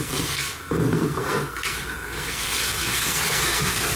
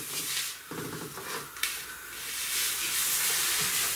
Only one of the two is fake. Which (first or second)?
first